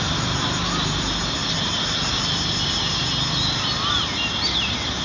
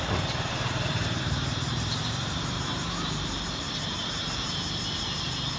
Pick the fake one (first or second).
second